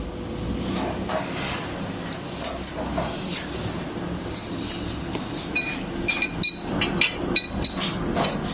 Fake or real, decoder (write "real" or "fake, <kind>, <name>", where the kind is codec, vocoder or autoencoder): real